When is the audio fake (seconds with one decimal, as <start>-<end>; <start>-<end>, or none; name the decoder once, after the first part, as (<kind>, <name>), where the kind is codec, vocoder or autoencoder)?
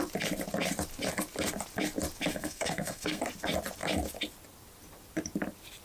2.3-3.2 (codec, SNAC)